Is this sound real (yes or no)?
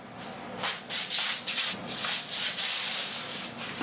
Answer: yes